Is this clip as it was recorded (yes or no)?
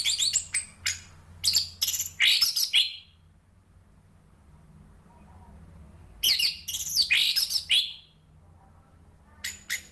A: yes